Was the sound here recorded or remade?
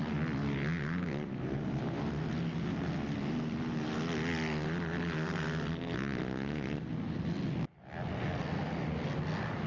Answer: recorded